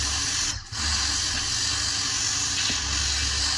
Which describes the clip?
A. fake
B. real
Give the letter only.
B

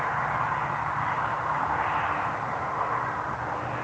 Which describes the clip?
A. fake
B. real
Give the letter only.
B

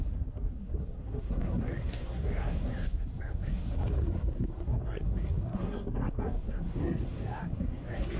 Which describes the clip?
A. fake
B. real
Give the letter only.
A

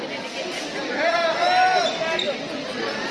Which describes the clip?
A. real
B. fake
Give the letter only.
A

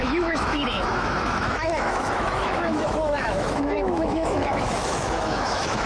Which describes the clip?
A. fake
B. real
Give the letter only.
A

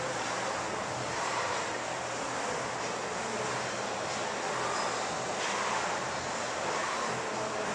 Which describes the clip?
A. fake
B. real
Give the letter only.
B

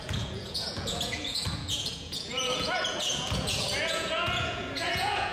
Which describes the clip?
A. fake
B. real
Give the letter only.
A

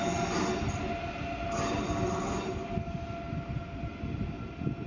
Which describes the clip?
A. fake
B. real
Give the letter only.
B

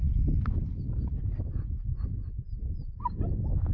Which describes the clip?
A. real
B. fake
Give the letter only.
A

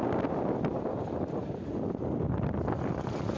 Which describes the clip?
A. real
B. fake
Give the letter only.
A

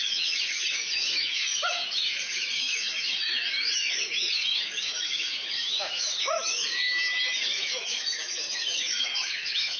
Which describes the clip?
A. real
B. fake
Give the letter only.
B